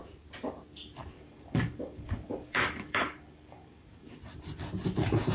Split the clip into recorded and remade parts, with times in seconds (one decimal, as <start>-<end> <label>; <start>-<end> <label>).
0.0-1.0 recorded; 1.0-4.2 remade; 4.2-5.3 recorded